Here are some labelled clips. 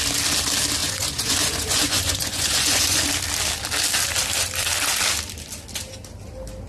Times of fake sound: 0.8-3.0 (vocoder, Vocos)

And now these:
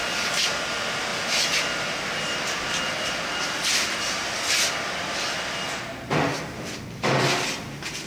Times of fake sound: 1.1-5.8 (vocoder, BigVGAN v2)

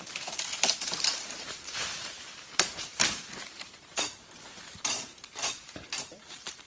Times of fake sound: 0.0-6.7 (vocoder, BigVGAN v2)

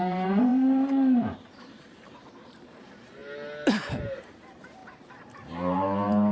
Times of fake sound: 0.0-6.3 (vocoder, BigVGAN v2)

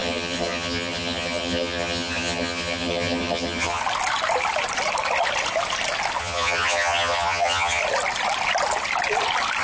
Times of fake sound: 0.0-3.8 (vocoder, HiFi-GAN); 6.2-7.8